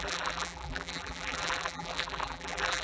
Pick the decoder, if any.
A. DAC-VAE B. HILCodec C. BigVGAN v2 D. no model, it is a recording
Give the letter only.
C